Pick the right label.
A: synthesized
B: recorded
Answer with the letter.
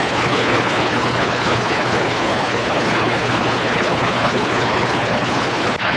A